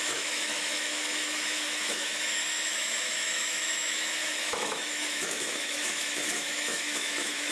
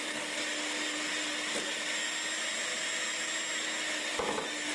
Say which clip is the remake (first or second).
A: first